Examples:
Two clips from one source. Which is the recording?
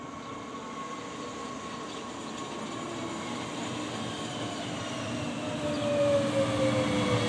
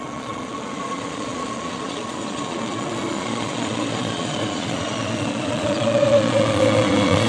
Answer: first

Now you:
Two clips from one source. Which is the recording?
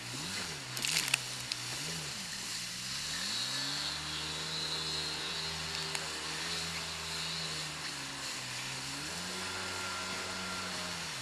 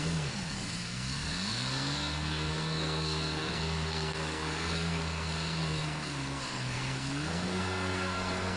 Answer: first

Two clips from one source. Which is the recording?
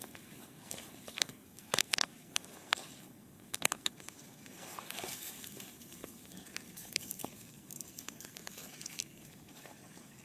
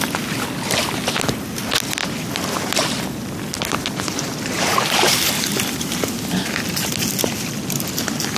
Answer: second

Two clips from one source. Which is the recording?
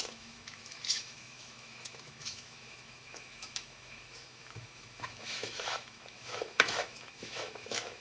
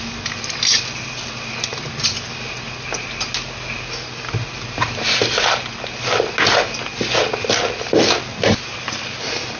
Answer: second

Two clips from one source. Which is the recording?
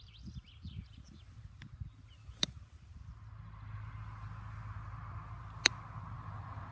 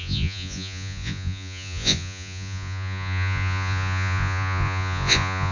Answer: first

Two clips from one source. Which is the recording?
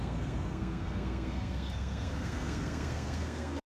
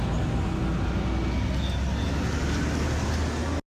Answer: second